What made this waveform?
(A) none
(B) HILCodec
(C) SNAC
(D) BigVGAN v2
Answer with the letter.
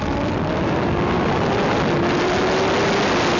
A